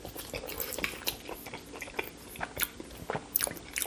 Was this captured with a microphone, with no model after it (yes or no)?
yes